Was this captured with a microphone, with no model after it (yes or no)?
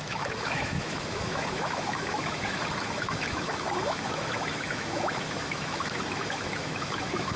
no